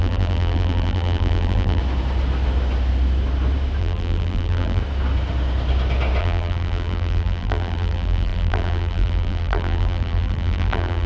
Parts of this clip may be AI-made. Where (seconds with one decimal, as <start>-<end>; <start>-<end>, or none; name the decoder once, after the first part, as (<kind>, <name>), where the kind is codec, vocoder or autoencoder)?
0.0-1.8 (vocoder, BigVGAN v2); 3.8-4.8; 6.2-11.1